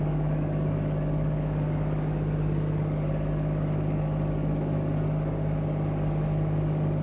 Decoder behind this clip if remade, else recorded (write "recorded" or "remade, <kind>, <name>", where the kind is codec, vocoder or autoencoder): remade, codec, DAC